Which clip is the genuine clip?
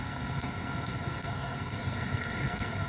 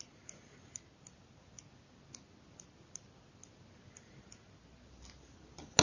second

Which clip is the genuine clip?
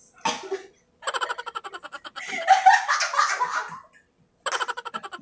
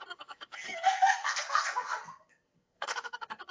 first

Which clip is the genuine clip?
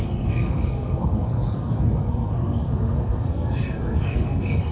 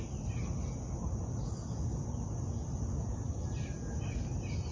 second